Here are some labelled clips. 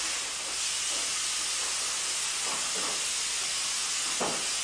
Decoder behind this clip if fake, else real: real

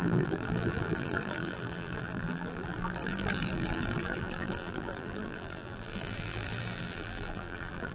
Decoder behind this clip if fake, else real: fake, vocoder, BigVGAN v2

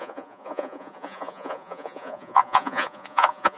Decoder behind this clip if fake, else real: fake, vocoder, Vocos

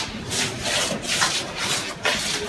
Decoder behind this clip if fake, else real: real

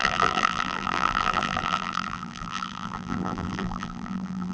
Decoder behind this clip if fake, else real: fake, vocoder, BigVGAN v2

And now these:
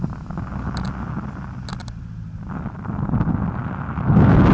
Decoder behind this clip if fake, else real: real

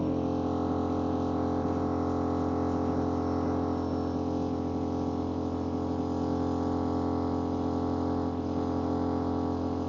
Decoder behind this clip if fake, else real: real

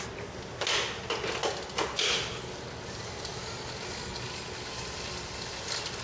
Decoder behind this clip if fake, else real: real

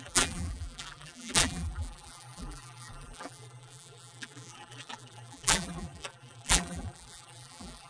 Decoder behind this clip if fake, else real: fake, vocoder, BigVGAN v2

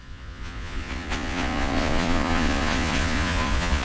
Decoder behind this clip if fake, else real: fake, vocoder, Vocos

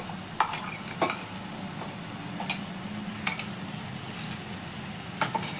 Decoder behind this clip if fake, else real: real